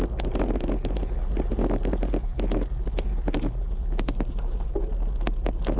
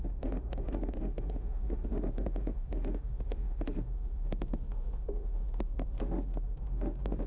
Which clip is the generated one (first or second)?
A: second